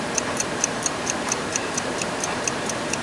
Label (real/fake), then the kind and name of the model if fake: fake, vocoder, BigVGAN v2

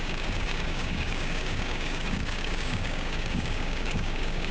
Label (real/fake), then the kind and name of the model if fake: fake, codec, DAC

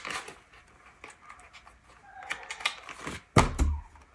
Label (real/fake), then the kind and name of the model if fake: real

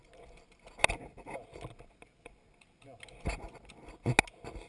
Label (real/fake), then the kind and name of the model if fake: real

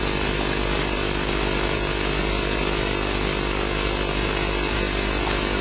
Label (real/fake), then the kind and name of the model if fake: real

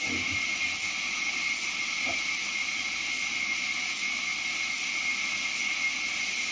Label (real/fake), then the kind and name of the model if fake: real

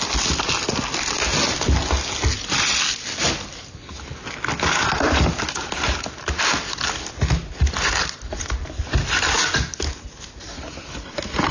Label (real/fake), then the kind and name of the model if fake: real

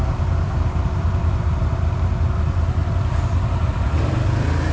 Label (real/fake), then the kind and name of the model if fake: fake, vocoder, BigVGAN v2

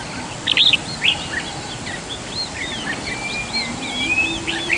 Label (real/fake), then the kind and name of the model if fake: real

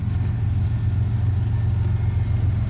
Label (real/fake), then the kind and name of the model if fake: real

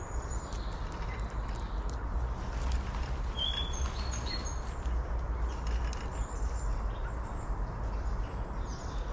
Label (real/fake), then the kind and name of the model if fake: real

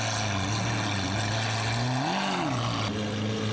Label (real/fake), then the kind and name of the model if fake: real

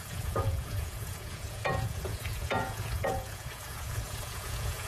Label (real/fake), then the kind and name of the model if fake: fake, vocoder, Vocos